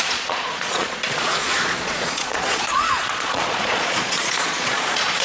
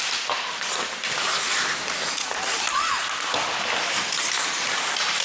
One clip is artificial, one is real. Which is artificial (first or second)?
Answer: first